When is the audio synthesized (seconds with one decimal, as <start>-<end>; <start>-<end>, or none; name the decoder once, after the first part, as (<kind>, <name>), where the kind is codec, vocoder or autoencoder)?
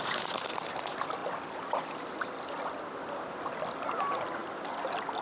none